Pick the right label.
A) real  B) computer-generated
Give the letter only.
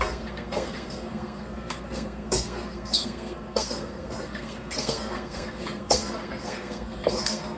B